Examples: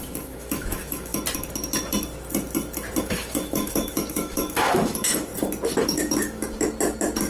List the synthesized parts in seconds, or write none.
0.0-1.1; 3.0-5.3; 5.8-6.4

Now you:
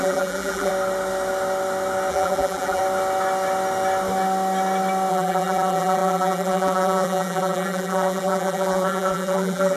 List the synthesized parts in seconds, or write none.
0.0-0.7; 2.1-2.8; 5.1-9.8

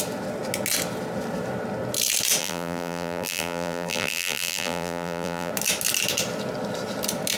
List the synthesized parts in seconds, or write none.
2.4-5.5

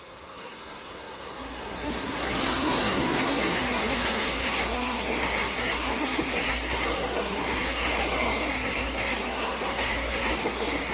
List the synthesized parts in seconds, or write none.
0.0-10.9

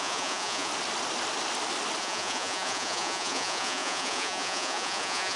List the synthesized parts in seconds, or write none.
0.0-0.7; 2.0-5.4

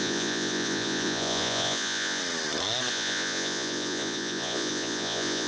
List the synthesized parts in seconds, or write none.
0.0-2.2; 2.9-5.5

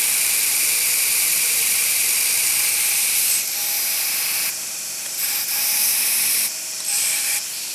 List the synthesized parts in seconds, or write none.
0.5-2.9